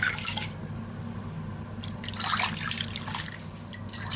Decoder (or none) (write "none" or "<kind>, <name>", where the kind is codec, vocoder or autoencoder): none